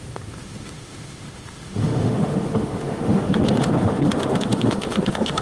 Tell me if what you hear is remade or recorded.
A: remade